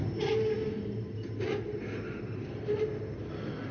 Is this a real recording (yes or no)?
yes